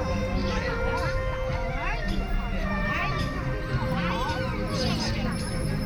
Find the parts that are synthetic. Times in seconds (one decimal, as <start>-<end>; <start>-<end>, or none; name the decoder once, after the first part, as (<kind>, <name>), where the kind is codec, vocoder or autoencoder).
0.0-0.4 (vocoder, BigVGAN v2); 2.2-5.9